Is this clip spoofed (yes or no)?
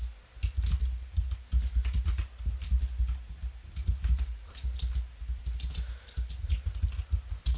no